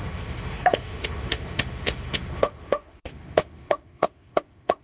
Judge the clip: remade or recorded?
remade